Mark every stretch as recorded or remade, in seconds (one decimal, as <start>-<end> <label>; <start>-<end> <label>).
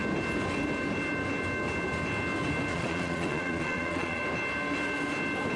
0.0-2.7 recorded; 2.7-4.2 remade; 4.2-5.6 recorded